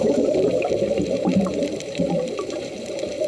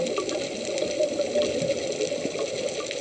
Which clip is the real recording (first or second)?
second